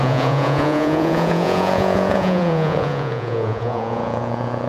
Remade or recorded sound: remade